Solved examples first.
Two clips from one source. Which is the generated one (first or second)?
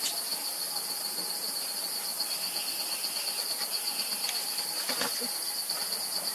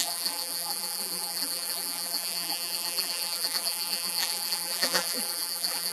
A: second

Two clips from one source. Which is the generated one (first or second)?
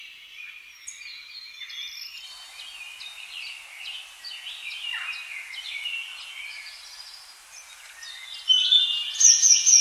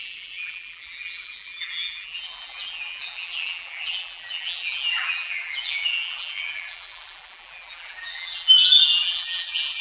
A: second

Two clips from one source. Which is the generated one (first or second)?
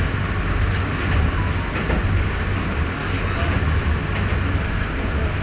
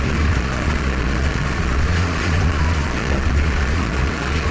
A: second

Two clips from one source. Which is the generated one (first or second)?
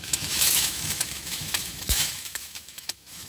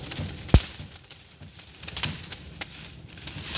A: first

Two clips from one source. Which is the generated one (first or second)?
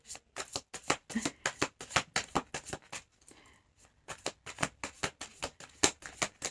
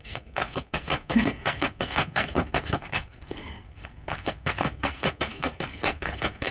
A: second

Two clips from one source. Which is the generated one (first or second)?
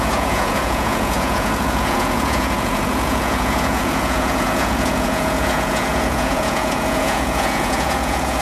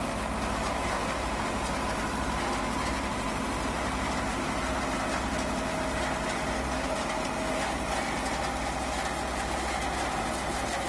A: first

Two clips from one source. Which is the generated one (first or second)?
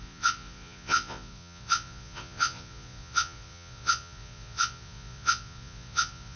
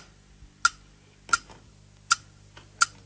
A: first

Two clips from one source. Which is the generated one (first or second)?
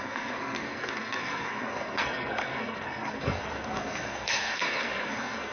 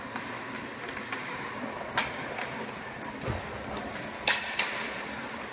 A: first